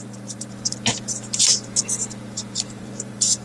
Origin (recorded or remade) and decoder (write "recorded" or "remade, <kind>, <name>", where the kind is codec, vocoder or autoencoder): remade, vocoder, BigVGAN v2